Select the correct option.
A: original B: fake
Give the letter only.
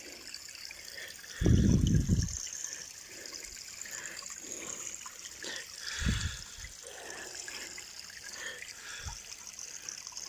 A